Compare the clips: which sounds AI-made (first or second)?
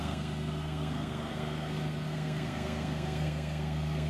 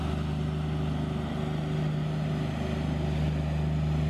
first